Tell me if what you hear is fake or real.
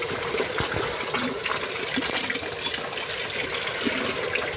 real